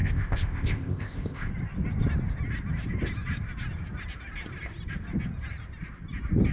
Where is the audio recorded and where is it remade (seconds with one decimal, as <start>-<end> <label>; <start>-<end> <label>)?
0.0-1.5 remade; 1.5-6.5 recorded